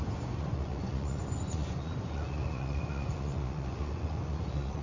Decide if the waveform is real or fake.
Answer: fake